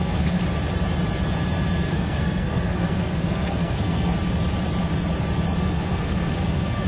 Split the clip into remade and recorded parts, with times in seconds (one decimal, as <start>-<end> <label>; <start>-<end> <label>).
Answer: 0.0-0.4 remade; 0.4-1.9 recorded; 1.9-4.1 remade; 4.1-5.6 recorded; 5.6-6.9 remade